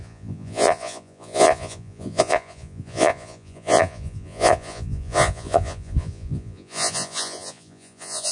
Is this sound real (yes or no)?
no